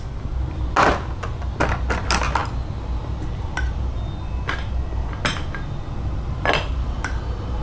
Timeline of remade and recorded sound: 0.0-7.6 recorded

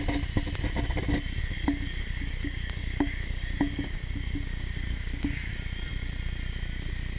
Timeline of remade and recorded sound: 0.0-1.4 recorded; 1.4-5.5 remade; 5.5-7.2 recorded

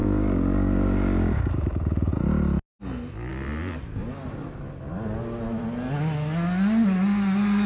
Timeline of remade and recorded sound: 0.0-2.1 remade; 2.1-7.7 recorded

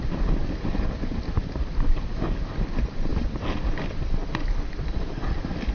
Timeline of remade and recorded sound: 0.0-5.7 recorded

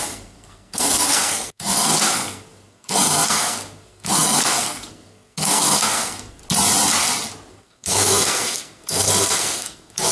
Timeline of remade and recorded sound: 0.0-6.4 remade; 6.4-7.5 recorded; 7.5-10.1 remade

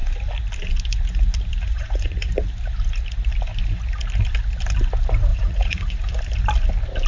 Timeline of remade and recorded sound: 0.0-1.7 recorded; 1.7-2.3 remade; 2.3-5.3 recorded; 5.3-6.2 remade; 6.2-7.1 recorded

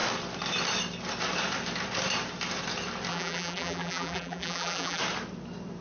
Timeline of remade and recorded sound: 0.0-3.1 recorded; 3.1-5.0 remade; 5.0-5.8 recorded

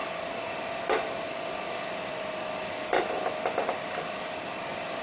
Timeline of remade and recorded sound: 0.0-5.0 remade